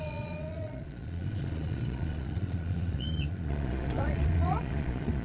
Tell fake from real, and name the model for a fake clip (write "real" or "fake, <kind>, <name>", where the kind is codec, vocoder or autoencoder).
fake, vocoder, Vocos